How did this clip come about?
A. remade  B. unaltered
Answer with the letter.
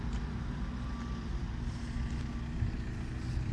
B